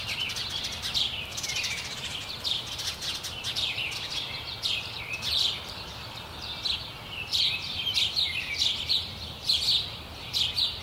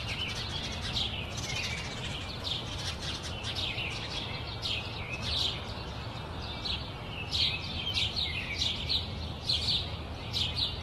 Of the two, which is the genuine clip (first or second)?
second